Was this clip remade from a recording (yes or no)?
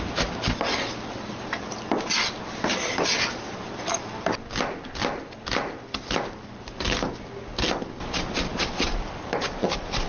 no